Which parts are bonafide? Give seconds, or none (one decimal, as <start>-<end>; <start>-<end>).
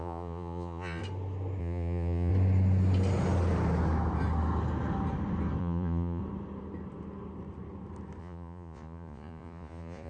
1.0-1.6; 2.3-5.6; 6.2-8.2